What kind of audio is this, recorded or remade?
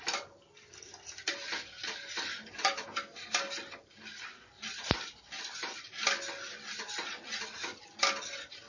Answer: recorded